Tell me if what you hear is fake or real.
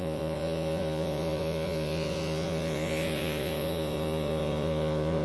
fake